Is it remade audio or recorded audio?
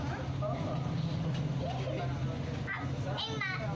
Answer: recorded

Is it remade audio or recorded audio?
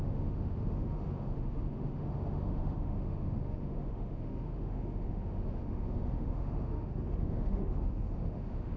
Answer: remade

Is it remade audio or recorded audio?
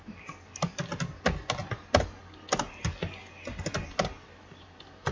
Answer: recorded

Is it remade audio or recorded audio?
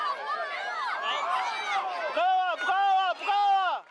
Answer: recorded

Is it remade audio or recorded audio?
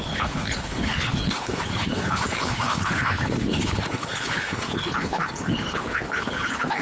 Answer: remade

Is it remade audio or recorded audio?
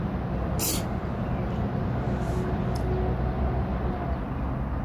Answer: recorded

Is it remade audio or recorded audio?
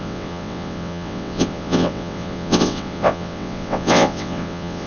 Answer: remade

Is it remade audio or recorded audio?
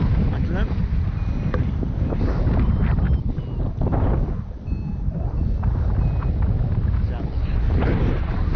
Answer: recorded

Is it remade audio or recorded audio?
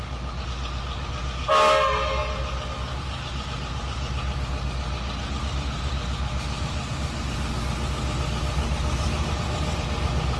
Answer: recorded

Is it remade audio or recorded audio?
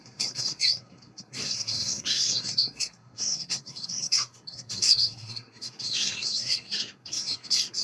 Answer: remade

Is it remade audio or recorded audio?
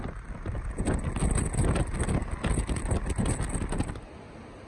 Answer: recorded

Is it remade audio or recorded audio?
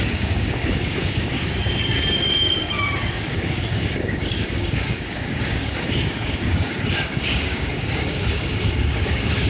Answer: remade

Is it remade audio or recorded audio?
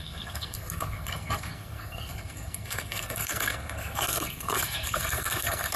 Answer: remade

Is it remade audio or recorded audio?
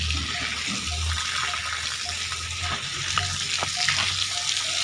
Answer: recorded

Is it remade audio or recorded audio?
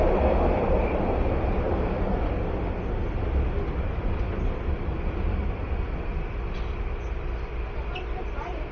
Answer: recorded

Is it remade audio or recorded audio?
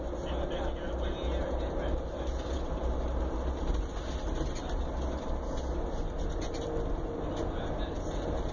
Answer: recorded